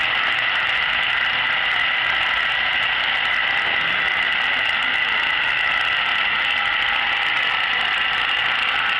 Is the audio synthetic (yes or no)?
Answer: no